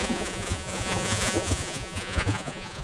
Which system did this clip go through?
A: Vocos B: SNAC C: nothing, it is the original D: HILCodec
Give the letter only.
A